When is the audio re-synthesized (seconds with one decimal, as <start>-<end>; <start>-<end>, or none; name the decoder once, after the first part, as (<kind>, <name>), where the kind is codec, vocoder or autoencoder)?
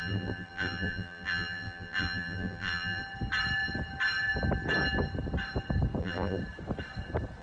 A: 0.0-3.0 (vocoder, BigVGAN v2); 6.0-6.4